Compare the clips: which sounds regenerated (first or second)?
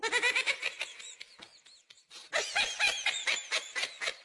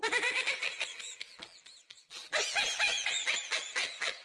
second